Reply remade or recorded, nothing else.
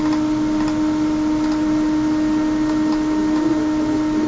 recorded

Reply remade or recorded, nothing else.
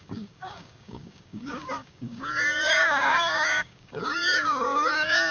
remade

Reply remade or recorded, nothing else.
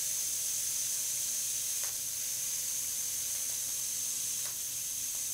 recorded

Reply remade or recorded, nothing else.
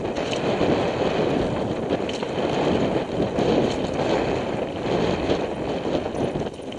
recorded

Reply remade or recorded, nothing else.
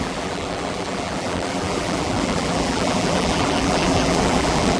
remade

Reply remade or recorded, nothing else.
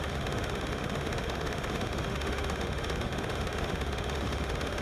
remade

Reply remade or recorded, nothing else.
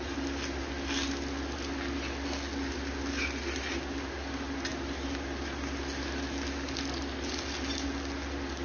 recorded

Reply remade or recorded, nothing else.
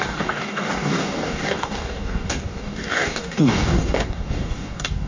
remade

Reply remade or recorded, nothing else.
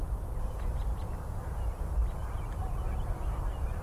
recorded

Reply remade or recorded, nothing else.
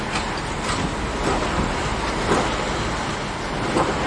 recorded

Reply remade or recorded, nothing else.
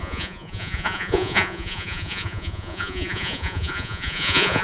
remade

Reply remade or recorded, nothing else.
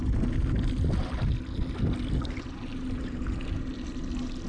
recorded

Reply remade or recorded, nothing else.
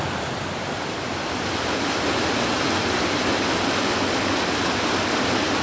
recorded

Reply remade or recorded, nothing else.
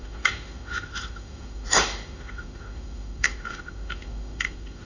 remade